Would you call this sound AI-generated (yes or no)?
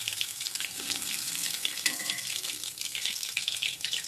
yes